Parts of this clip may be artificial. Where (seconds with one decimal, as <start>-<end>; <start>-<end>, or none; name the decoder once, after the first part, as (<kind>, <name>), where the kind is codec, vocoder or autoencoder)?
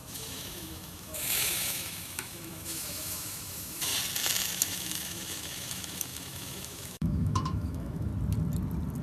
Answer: 0.0-3.9 (autoencoder, DAC-VAE); 4.5-8.1